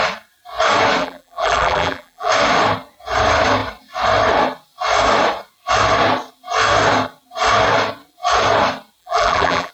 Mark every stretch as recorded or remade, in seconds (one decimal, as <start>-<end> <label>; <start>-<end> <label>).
0.0-1.0 recorded; 1.0-2.3 remade; 2.3-9.0 recorded; 9.0-9.7 remade